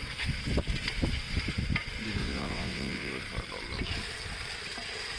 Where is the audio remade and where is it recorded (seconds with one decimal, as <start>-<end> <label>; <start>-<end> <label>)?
0.0-2.2 recorded; 2.2-3.1 remade; 3.1-5.2 recorded